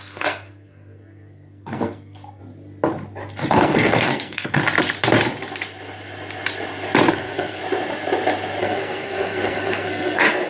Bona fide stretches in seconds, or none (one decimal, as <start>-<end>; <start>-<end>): 2.4-3.5; 4.6-7.1; 7.6-8.6